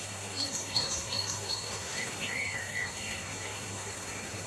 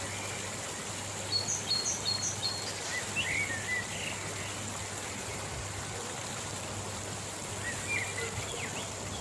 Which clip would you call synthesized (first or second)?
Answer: first